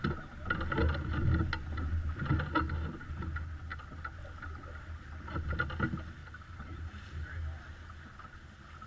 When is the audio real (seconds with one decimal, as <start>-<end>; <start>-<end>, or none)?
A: 0.0-6.2; 7.3-8.9